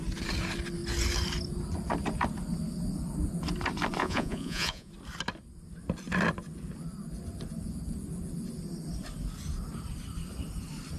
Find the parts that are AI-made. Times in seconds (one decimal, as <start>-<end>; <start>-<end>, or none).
4.0-4.9